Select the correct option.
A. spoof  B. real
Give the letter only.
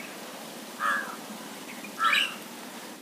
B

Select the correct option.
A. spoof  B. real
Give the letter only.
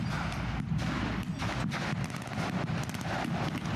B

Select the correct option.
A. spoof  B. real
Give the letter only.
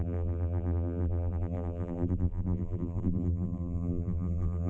A